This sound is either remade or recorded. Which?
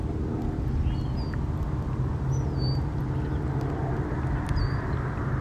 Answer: recorded